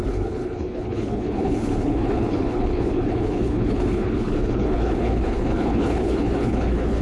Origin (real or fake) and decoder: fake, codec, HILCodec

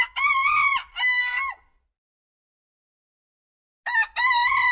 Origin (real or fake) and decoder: real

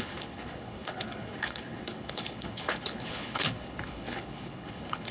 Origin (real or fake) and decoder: fake, codec, HILCodec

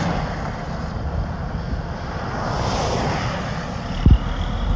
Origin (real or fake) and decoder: real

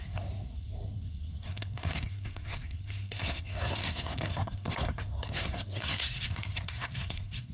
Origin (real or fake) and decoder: fake, codec, SNAC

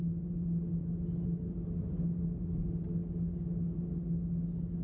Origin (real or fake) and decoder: real